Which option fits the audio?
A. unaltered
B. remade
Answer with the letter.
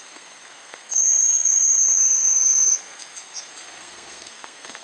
B